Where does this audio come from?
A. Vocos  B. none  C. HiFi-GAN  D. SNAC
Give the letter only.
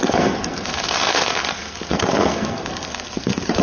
D